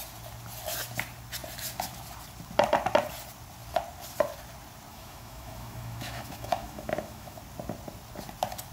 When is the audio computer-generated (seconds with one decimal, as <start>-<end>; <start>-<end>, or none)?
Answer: 4.9-7.4